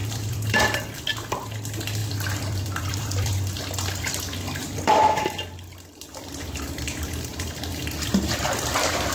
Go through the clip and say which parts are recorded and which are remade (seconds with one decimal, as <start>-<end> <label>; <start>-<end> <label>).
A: 0.0-1.0 remade; 1.0-2.0 recorded; 2.0-6.4 remade; 6.4-7.3 recorded; 7.3-8.7 remade; 8.7-9.1 recorded